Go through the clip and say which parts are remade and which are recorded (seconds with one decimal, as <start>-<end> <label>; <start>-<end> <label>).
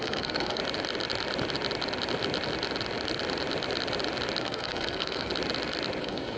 0.0-0.6 remade; 0.6-4.4 recorded; 4.4-5.3 remade; 5.3-6.0 recorded; 6.0-6.4 remade